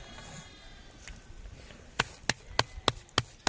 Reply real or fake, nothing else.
real